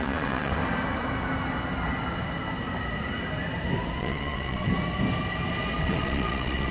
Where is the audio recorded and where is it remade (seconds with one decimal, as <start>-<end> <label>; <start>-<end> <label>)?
0.0-0.6 remade; 0.6-4.0 recorded; 4.0-4.7 remade; 4.7-5.8 recorded; 5.8-6.7 remade